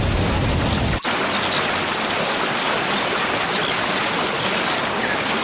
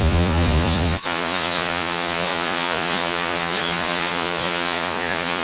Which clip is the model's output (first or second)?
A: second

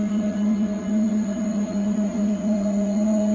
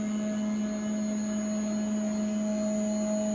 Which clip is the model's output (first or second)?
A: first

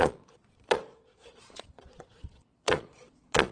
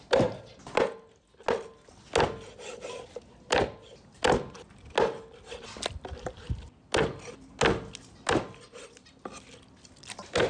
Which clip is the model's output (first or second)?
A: first